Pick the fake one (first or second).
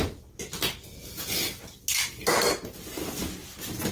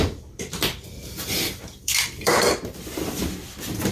second